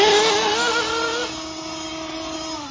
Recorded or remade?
recorded